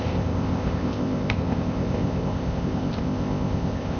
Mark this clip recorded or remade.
remade